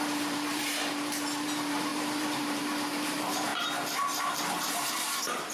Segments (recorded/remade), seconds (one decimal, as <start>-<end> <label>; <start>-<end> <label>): 0.0-3.5 remade; 3.5-4.2 recorded; 4.2-5.5 remade